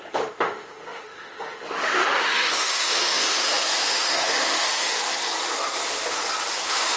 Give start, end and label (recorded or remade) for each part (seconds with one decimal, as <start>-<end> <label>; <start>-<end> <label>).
0.0-5.3 remade; 5.3-6.5 recorded; 6.5-7.0 remade